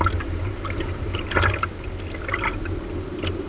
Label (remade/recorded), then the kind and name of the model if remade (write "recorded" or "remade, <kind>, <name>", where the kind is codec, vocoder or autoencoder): recorded